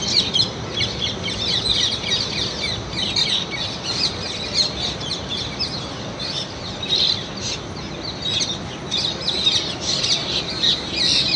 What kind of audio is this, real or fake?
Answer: real